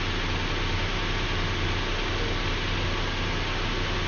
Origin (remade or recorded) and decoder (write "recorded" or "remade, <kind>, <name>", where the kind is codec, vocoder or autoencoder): recorded